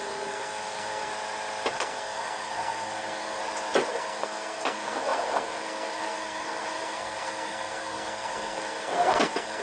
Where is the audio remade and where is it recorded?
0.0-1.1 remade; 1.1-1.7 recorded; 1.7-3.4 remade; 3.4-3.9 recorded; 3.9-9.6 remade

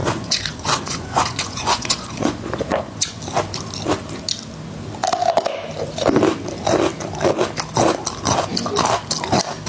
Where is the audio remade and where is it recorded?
0.0-3.2 remade; 3.2-9.7 recorded

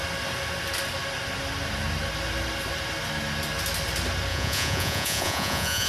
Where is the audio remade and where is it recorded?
0.0-4.3 recorded; 4.3-5.9 remade

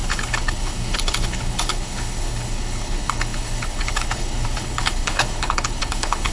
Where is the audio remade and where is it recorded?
0.0-6.3 remade

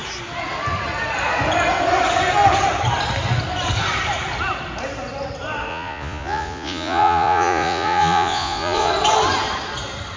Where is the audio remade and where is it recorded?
0.0-5.7 recorded; 5.7-8.9 remade; 8.9-10.2 recorded

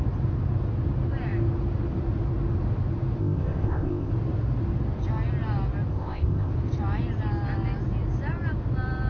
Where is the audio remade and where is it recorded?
0.0-3.2 recorded; 3.2-4.1 remade; 4.1-5.9 recorded; 5.9-6.5 remade; 6.5-9.1 recorded

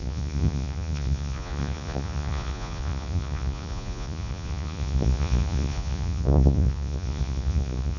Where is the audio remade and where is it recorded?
0.0-8.0 remade

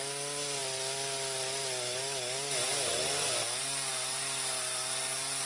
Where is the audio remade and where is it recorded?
0.0-5.5 recorded